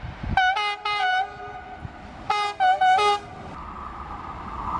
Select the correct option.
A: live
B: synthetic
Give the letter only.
A